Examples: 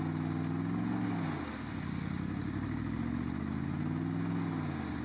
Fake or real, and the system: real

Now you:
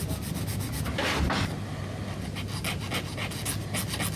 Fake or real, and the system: real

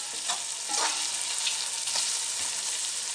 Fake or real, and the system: real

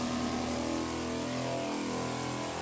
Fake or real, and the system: real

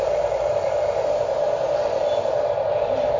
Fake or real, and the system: real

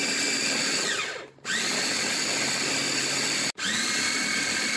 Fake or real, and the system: real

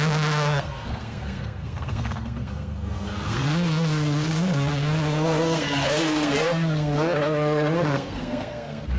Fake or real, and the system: fake, codec, SNAC